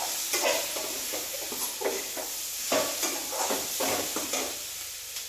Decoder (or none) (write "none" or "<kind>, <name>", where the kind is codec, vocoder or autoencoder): none